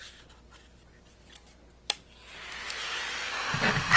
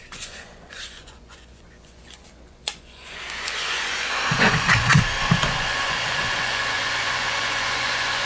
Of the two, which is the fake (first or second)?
second